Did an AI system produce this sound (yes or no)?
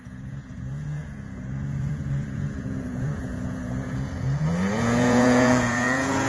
yes